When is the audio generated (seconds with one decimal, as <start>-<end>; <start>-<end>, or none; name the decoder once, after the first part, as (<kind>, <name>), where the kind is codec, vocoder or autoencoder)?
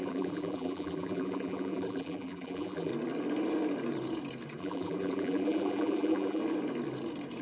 0.0-2.9 (vocoder, BigVGAN v2); 4.6-6.4